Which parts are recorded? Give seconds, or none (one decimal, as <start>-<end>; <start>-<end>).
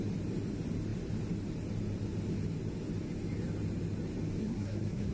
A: 0.0-4.4